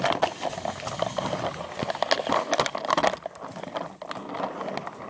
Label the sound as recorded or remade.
recorded